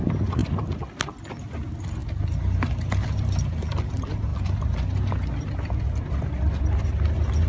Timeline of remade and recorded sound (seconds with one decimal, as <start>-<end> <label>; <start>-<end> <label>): 0.0-7.5 recorded